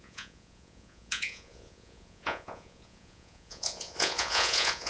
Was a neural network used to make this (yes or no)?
yes